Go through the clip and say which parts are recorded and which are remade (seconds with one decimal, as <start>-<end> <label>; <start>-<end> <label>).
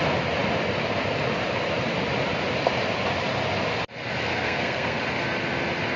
0.0-4.3 recorded; 4.3-5.0 remade; 5.0-6.0 recorded